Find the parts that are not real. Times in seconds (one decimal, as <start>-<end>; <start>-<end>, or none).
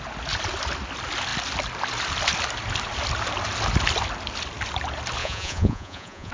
5.2-6.3